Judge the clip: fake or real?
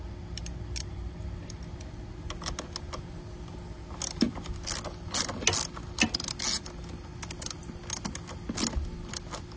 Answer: real